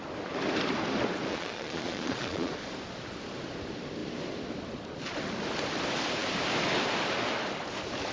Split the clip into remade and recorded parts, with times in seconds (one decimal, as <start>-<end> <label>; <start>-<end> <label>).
0.0-1.3 recorded; 1.3-2.5 remade; 2.5-8.1 recorded